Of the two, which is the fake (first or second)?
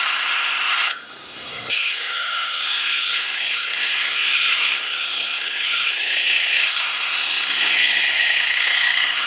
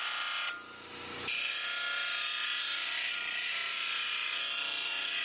first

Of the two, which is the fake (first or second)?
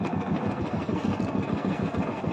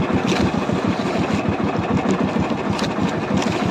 first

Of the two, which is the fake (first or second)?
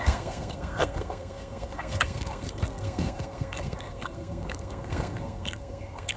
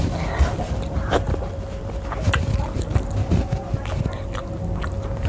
first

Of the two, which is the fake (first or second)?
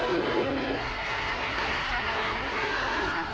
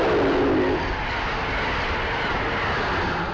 first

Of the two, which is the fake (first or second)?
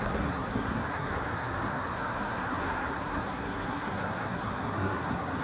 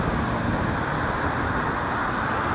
first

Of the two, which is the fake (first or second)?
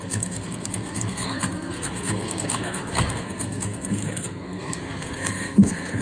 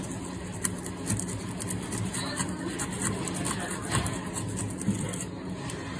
first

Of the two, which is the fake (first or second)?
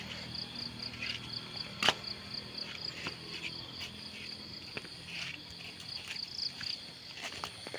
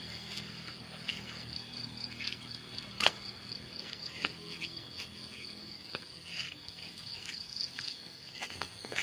second